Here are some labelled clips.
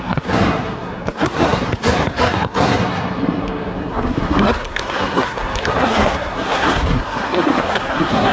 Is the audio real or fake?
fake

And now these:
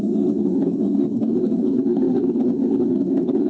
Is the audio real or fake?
fake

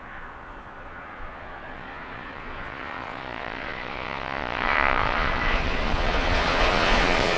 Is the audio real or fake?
fake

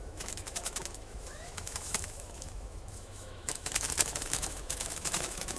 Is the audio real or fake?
fake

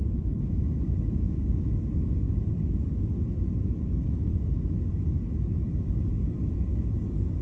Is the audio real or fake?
fake